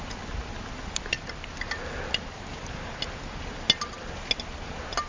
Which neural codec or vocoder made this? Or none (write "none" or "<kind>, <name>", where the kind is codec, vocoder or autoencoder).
none